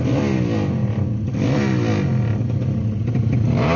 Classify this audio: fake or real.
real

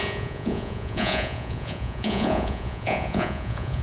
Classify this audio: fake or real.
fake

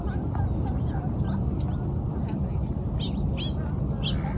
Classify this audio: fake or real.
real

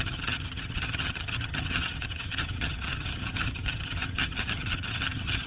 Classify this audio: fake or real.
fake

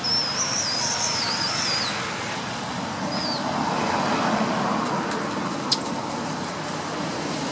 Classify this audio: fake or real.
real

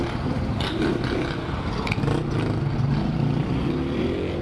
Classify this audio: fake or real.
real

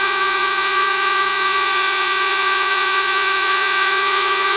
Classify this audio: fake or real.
fake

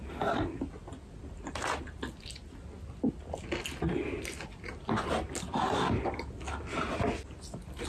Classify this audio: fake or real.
real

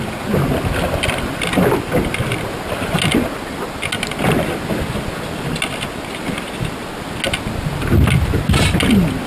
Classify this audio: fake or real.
real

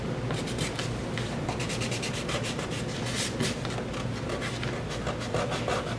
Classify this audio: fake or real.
real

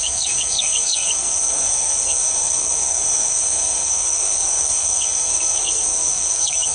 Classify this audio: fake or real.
fake